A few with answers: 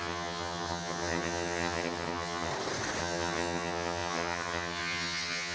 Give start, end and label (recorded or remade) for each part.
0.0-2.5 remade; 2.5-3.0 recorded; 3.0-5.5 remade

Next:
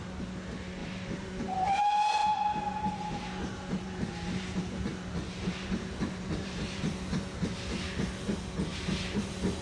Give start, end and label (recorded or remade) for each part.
0.0-0.8 recorded; 0.8-1.8 remade; 1.8-2.2 recorded; 2.2-6.8 remade; 6.8-8.7 recorded; 8.7-9.2 remade; 9.2-9.6 recorded